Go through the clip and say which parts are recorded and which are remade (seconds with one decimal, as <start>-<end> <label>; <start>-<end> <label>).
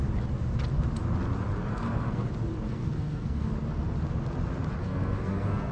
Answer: 0.0-1.7 recorded; 1.7-2.3 remade; 2.3-2.7 recorded; 2.7-3.5 remade; 3.5-4.8 recorded; 4.8-5.7 remade